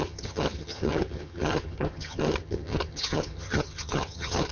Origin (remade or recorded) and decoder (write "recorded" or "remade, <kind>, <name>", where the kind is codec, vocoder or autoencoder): remade, vocoder, HiFi-GAN